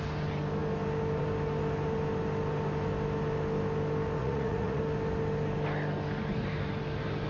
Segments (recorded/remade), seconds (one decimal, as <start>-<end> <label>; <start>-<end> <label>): 0.0-4.2 recorded; 4.2-4.8 remade; 4.8-7.3 recorded

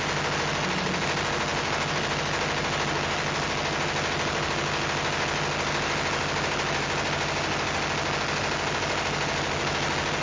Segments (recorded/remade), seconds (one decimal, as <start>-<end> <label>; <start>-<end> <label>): 0.0-10.2 recorded